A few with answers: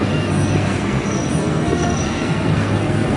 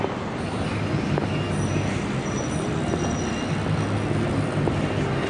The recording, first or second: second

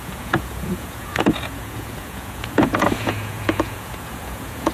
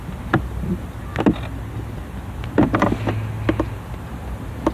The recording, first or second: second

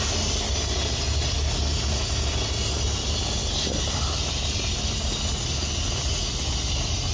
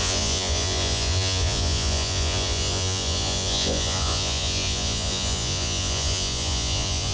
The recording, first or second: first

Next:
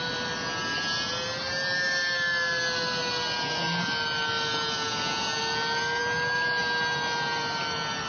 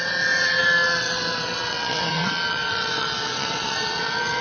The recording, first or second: first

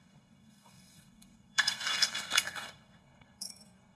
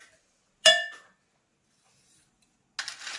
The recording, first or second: second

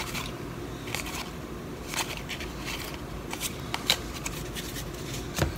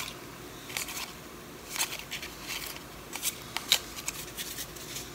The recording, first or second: second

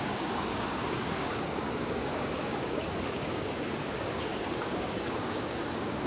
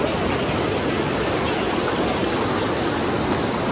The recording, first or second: second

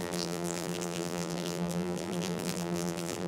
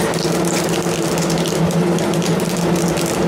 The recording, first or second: second